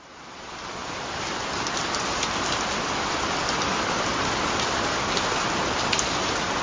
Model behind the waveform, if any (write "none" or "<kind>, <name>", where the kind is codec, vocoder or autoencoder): none